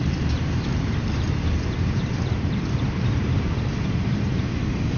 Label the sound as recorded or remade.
remade